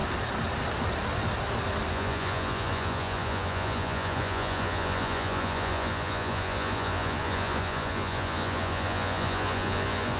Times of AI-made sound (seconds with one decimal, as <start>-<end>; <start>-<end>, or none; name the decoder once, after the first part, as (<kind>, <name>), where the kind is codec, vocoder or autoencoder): 1.9-10.2 (vocoder, Vocos)